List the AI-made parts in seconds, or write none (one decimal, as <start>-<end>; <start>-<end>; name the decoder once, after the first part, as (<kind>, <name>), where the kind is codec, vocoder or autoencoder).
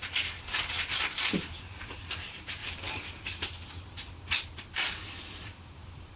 0.6-2.6 (vocoder, BigVGAN v2); 4.5-6.2